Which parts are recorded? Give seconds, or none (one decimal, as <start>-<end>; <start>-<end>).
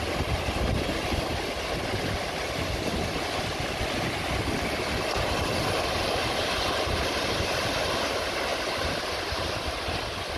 0.0-10.4